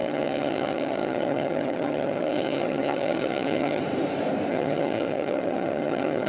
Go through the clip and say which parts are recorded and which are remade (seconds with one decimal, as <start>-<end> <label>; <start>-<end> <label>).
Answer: 0.0-3.8 remade; 3.8-4.5 recorded; 4.5-6.3 remade